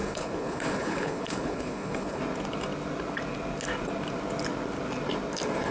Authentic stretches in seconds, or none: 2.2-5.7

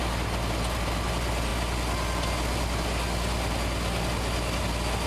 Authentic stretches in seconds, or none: 0.0-5.1

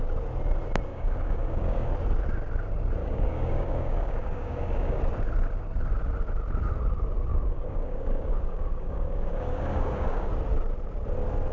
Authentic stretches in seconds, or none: 0.0-0.9; 1.9-3.0; 5.0-7.3; 10.3-11.5